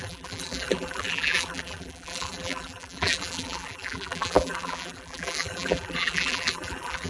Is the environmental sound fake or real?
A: fake